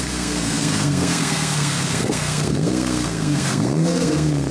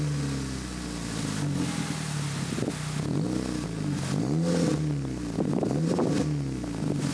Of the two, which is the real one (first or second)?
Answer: second